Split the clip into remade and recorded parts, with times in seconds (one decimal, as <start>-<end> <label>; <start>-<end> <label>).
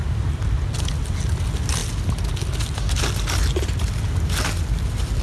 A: 0.0-5.2 recorded